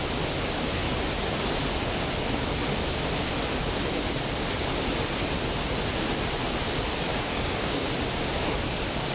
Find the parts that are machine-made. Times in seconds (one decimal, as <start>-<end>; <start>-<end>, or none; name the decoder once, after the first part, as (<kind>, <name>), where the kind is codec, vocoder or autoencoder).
7.1-7.9 (codec, DAC)